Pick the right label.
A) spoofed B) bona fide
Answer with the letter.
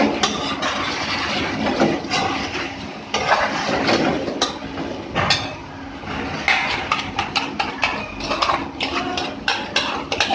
B